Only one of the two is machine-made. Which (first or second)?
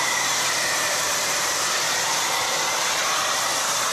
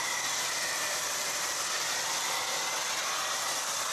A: first